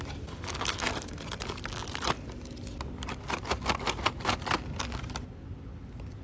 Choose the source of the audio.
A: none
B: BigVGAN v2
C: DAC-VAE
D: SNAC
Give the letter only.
A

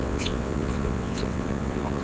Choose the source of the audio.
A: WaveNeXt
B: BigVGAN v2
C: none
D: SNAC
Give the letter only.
A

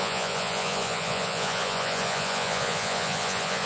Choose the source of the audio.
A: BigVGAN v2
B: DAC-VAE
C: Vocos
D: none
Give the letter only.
C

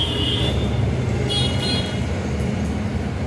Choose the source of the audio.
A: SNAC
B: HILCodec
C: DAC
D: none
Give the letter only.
D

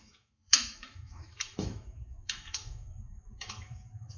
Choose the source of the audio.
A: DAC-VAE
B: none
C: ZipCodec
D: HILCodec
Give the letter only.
A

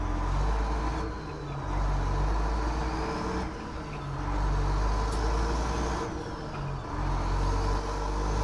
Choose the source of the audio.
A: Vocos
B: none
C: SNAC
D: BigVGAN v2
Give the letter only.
B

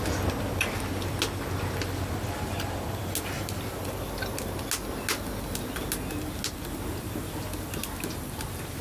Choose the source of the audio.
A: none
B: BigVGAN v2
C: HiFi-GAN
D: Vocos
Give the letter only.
A